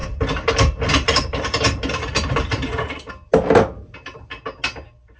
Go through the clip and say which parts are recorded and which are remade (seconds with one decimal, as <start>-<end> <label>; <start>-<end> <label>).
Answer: 0.0-3.1 remade; 3.1-5.2 recorded

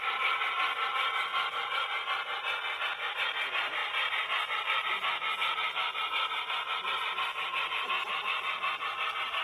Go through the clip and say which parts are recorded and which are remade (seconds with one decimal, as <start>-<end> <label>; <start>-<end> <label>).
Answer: 0.0-1.3 recorded; 1.3-2.8 remade; 2.8-9.4 recorded

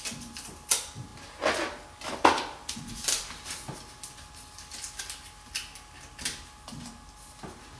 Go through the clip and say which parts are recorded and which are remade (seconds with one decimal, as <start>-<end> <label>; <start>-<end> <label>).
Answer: 0.0-7.8 recorded

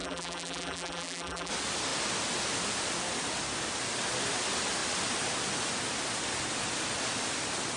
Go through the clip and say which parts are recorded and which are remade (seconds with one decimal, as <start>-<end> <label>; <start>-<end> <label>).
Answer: 0.0-1.5 remade; 1.5-7.8 recorded

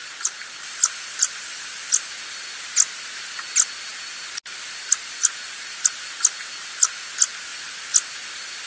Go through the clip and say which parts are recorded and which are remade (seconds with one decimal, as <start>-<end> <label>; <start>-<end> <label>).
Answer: 0.0-2.1 remade; 2.1-8.7 recorded

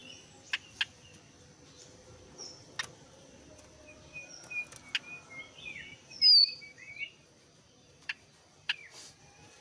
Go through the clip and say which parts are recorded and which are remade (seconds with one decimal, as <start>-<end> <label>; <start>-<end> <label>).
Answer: 0.0-6.4 recorded; 6.4-9.2 remade; 9.2-9.6 recorded